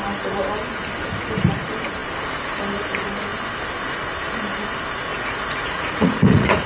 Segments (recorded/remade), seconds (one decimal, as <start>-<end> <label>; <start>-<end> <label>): 0.0-5.1 recorded; 5.1-6.7 remade